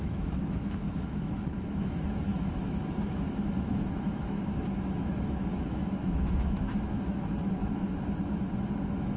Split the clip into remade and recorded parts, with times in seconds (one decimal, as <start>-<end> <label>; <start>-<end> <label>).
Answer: 0.0-9.2 remade